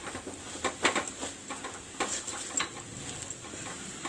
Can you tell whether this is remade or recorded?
recorded